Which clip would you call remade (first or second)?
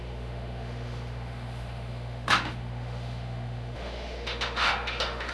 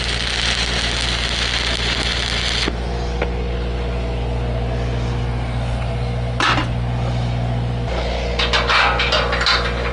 first